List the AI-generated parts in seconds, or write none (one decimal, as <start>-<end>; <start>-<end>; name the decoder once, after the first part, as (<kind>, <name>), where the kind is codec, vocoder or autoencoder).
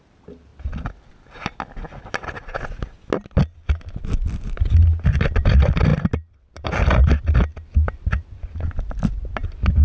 7.5-8.5 (vocoder, BigVGAN v2)